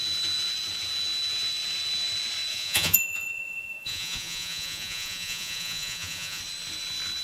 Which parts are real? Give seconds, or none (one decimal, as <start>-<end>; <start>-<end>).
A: 0.0-2.5; 6.4-7.2

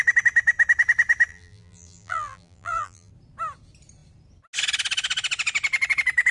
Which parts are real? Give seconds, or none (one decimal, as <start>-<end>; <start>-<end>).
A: 0.0-1.3; 3.1-6.3